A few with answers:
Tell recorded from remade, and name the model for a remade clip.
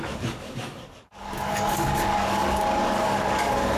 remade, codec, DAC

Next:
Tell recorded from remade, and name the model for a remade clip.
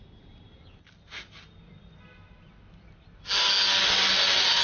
recorded